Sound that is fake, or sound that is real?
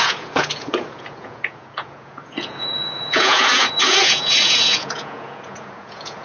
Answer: fake